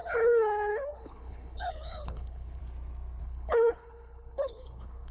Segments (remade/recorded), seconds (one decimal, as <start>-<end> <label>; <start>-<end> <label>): 0.0-2.6 remade; 2.6-3.2 recorded; 3.2-5.1 remade